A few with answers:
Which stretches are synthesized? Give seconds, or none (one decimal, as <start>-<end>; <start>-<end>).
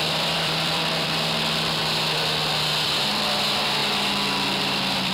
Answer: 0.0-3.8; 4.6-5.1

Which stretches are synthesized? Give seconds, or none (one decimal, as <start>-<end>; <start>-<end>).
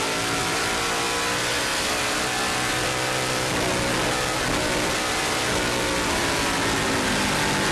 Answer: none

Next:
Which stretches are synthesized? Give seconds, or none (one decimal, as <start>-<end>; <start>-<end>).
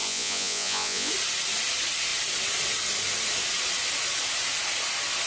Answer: 0.0-1.1